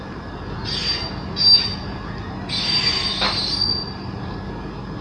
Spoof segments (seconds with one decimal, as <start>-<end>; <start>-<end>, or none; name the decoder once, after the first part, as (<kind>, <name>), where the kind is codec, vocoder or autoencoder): none